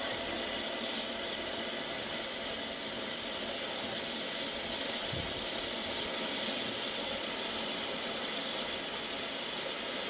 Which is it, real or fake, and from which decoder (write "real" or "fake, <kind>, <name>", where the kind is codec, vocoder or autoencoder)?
real